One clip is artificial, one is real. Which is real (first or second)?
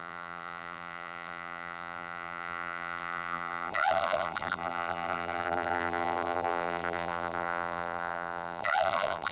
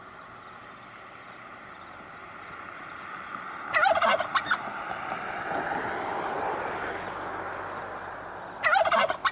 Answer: second